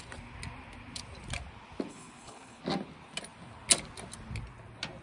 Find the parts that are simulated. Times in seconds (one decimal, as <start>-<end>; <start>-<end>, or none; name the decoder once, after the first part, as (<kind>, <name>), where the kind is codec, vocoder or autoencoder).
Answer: 1.9-2.6 (codec, HILCodec)